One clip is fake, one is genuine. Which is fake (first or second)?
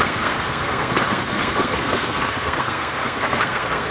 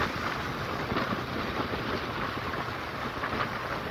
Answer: first